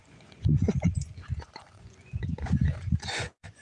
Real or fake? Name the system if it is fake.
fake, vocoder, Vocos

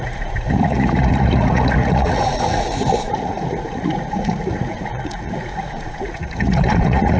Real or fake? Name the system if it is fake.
fake, vocoder, Vocos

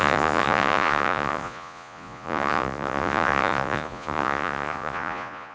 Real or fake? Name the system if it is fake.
fake, vocoder, Vocos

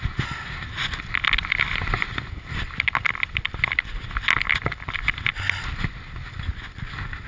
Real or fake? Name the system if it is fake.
real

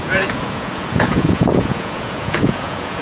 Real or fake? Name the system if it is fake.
fake, vocoder, Vocos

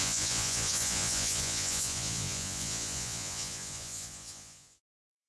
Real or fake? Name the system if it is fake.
fake, vocoder, Vocos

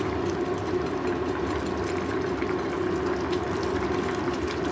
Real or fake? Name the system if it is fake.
real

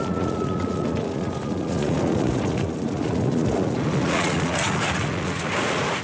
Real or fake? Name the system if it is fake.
fake, vocoder, Vocos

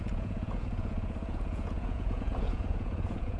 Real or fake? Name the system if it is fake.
fake, vocoder, Vocos